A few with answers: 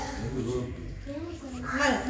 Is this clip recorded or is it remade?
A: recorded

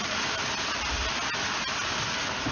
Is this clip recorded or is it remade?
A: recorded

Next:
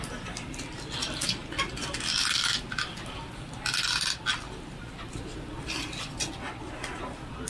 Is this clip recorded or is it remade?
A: recorded